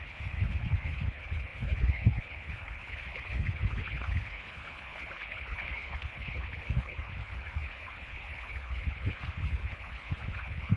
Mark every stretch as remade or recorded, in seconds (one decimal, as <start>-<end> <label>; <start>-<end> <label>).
0.0-10.8 remade